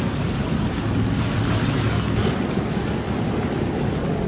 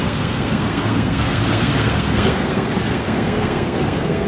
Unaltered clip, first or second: first